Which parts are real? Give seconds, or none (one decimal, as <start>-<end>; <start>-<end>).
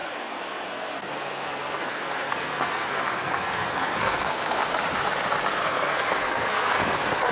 4.6-5.5